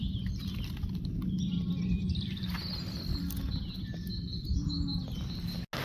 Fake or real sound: real